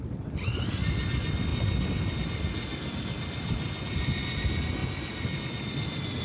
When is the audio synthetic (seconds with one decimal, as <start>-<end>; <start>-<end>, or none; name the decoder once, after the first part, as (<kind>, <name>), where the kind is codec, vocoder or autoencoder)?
none